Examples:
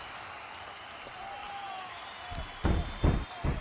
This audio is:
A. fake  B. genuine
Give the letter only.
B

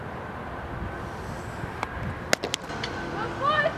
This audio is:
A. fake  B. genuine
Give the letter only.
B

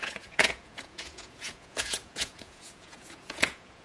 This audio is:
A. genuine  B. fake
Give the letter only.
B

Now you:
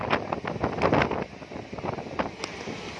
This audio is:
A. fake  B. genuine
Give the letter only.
B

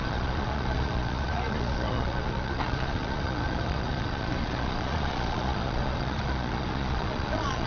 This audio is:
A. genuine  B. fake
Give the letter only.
B